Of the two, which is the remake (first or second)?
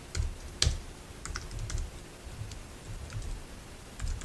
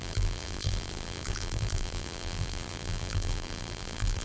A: second